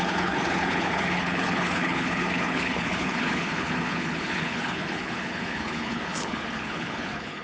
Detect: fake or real fake